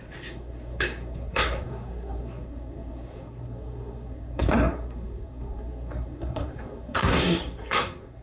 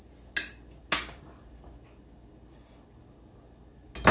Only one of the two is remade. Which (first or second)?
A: first